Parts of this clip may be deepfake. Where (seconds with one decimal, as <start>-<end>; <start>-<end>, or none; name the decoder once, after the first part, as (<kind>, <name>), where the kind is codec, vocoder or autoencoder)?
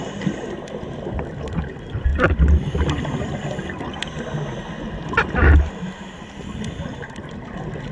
none